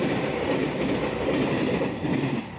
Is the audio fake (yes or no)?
no